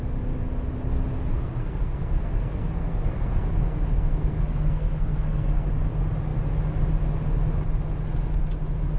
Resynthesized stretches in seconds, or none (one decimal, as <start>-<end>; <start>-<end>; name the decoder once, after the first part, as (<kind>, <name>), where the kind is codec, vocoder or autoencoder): 1.3-5.7 (codec, SNAC)